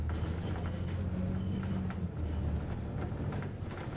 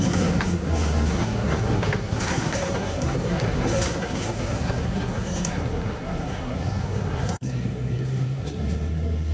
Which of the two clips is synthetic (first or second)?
second